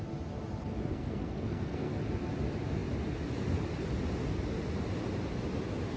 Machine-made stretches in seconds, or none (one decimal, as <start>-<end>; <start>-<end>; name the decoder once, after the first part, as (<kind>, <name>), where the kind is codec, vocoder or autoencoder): 0.9-2.0 (codec, SNAC)